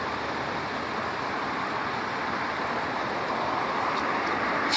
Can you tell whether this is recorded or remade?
remade